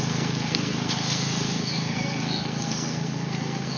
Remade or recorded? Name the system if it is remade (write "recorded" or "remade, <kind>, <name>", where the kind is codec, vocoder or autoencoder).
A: remade, codec, SNAC